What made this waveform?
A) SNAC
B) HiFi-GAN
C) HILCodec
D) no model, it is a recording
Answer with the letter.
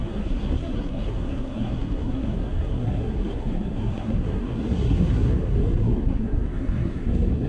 A